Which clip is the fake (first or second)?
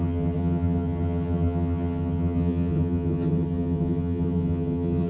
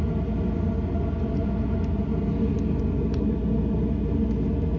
first